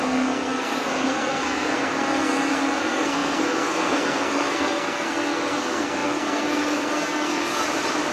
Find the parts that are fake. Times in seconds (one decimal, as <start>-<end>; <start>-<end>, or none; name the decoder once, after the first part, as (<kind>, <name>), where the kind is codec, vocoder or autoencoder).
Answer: 0.0-7.6 (codec, SNAC)